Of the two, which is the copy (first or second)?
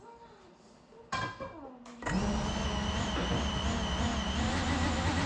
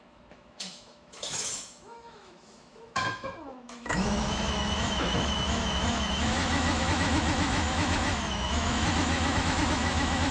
second